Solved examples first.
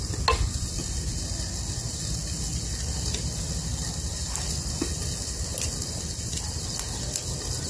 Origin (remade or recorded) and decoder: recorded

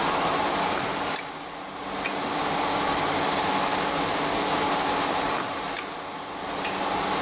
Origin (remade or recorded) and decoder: recorded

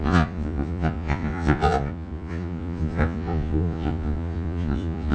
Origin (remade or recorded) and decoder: remade, vocoder, Vocos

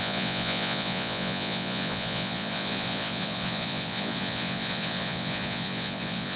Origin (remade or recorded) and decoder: remade, vocoder, Vocos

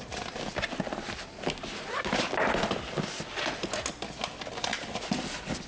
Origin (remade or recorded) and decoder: recorded